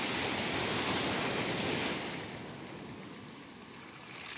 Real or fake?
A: real